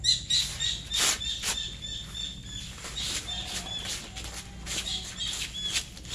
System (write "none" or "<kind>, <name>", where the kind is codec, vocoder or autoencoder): none